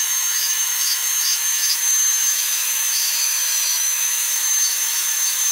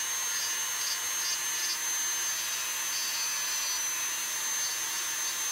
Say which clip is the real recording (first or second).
second